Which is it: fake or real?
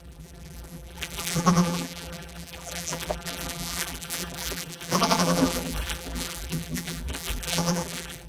fake